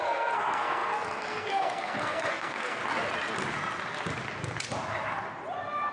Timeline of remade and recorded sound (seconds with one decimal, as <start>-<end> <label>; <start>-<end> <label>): 0.0-2.8 remade; 2.8-5.9 recorded